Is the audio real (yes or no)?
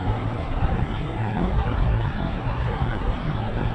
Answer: no